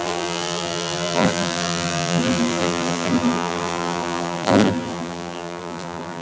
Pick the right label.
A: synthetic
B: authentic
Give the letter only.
A